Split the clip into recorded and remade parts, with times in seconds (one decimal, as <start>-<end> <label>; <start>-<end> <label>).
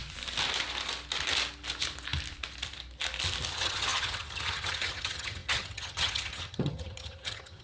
0.0-3.5 recorded; 3.5-7.6 remade